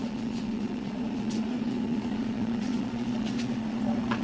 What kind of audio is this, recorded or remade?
remade